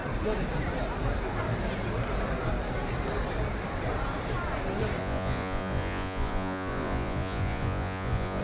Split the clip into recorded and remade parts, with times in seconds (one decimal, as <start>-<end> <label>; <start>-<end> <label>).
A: 0.0-5.0 recorded; 5.0-8.4 remade